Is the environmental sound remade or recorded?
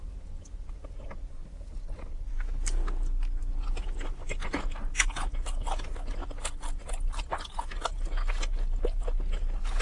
recorded